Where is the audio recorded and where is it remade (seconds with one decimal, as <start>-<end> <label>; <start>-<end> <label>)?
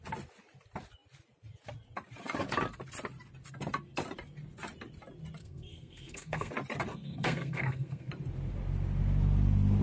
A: 0.0-5.4 recorded; 5.4-6.5 remade; 6.5-6.9 recorded; 6.9-8.1 remade; 8.1-9.8 recorded